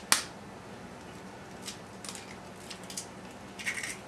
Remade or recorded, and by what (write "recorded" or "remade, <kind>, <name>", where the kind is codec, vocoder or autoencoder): recorded